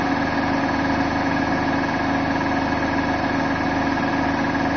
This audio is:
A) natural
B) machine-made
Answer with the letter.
A